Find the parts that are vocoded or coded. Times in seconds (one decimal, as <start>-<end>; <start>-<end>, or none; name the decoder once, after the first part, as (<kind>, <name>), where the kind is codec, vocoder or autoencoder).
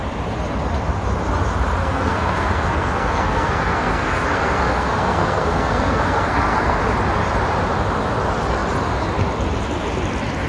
1.8-6.8 (codec, SNAC)